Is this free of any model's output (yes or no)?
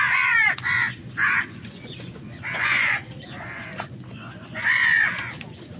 no